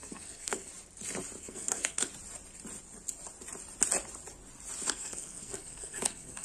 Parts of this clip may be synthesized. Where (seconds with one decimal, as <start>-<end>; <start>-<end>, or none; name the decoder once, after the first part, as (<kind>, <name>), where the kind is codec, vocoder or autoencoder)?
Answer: 0.0-0.7 (codec, SNAC); 1.4-2.1; 4.9-6.4